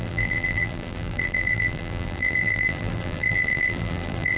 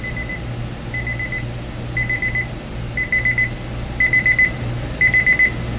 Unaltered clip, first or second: second